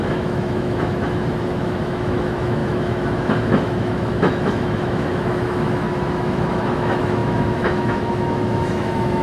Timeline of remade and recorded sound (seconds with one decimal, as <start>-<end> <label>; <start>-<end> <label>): 0.0-9.2 remade